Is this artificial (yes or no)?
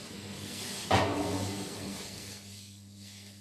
yes